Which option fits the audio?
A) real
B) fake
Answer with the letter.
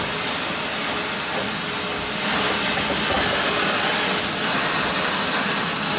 A